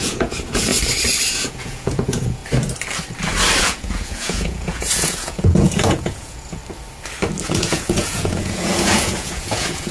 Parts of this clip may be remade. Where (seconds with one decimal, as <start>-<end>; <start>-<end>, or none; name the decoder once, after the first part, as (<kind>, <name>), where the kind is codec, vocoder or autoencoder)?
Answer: 0.0-0.7 (vocoder, Vocos); 1.3-2.4; 3.6-6.6; 7.5-9.9